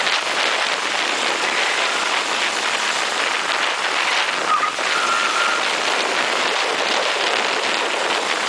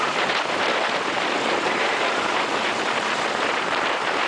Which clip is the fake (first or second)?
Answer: second